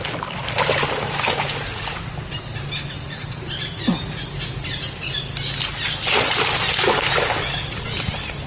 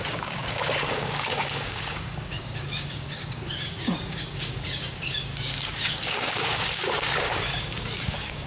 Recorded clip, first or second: first